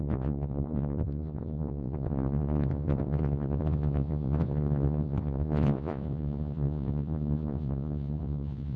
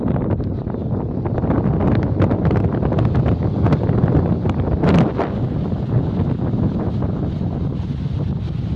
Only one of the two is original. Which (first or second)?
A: second